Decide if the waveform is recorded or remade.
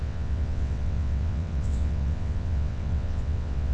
remade